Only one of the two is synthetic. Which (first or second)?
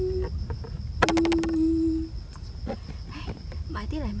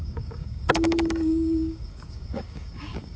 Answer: second